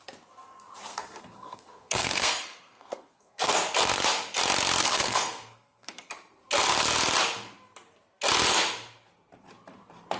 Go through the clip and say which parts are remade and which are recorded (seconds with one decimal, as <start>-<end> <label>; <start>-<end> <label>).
0.0-0.9 recorded; 0.9-3.5 remade; 3.5-4.8 recorded; 4.8-6.1 remade; 6.1-10.2 recorded